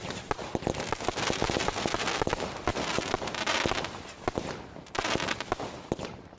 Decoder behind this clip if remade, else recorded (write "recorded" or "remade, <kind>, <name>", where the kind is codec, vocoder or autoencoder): recorded